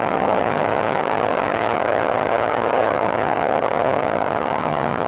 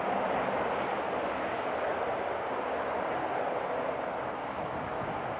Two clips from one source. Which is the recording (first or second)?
second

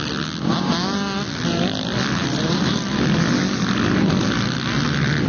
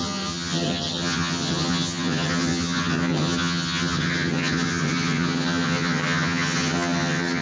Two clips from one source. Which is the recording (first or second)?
first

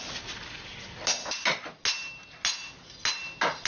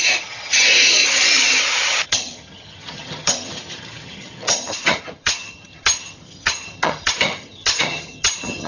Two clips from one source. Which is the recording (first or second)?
first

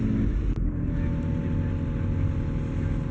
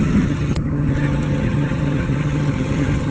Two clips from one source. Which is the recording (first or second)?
first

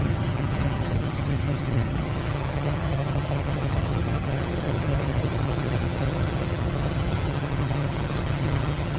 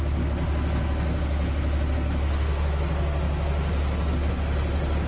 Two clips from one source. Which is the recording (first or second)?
second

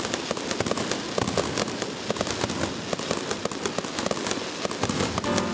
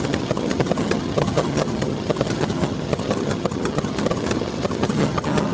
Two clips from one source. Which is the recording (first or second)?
first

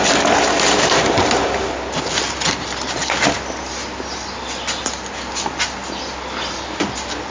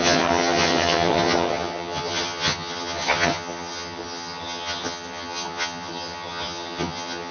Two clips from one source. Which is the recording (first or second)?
first